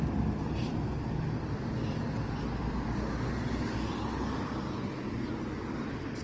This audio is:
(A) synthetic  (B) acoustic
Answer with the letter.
B